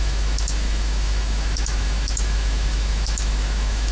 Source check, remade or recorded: remade